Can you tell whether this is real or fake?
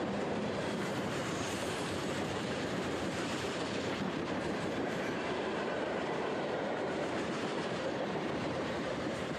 fake